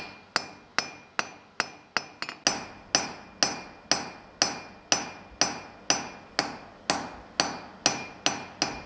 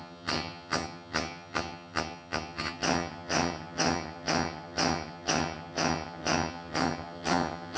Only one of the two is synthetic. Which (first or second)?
second